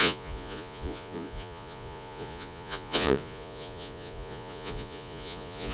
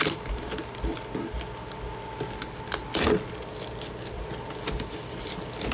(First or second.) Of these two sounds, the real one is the second